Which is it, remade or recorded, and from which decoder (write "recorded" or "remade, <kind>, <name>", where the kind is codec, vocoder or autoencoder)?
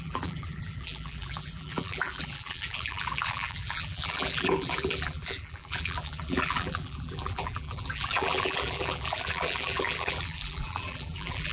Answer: remade, vocoder, BigVGAN v2